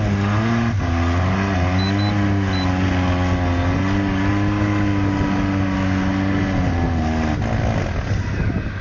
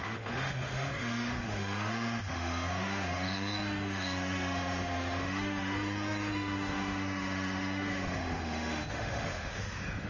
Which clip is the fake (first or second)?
second